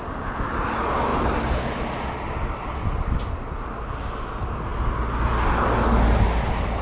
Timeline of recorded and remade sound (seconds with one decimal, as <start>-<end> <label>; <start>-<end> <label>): 0.0-6.8 recorded